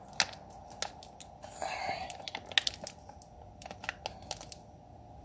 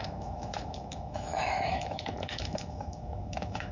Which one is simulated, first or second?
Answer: second